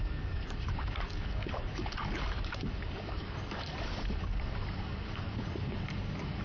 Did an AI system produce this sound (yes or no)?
yes